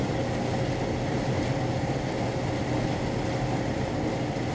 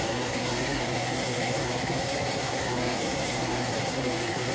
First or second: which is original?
first